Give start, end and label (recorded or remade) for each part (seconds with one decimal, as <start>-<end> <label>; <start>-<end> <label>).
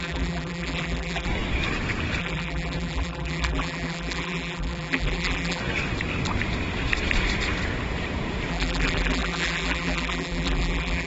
0.0-1.3 remade; 1.3-2.2 recorded; 2.2-5.6 remade; 5.6-8.5 recorded; 8.5-11.1 remade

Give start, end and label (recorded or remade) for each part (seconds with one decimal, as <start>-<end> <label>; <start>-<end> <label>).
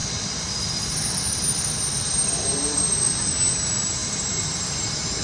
0.0-3.1 recorded; 3.1-5.2 remade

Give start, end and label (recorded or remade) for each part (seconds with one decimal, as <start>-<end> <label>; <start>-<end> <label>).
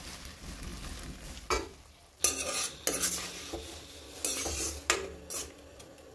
0.0-6.1 recorded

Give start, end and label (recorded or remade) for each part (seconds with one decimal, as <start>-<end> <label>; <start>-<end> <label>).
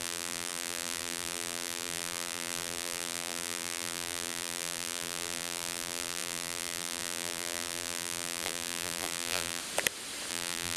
0.0-9.6 remade; 9.6-10.3 recorded; 10.3-10.8 remade